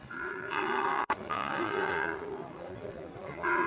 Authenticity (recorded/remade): remade